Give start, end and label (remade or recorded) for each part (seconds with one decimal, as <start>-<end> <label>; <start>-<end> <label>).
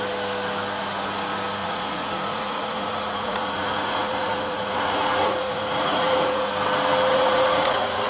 0.0-1.6 recorded; 1.6-6.5 remade; 6.5-7.1 recorded; 7.1-8.1 remade